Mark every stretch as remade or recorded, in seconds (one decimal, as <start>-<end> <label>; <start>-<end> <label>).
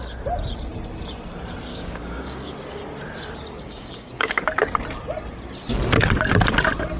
0.0-1.7 recorded; 1.7-2.5 remade; 2.5-3.6 recorded; 3.6-4.4 remade; 4.4-7.0 recorded